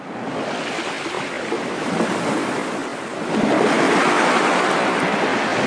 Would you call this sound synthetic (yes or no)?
no